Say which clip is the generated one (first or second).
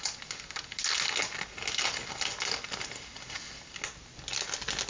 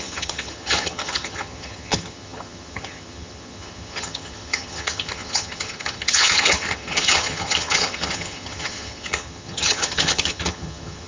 second